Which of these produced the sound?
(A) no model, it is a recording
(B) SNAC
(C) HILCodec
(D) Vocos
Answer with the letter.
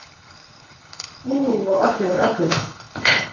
C